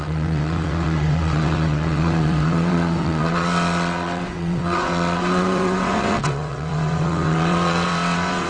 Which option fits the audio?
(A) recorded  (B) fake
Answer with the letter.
B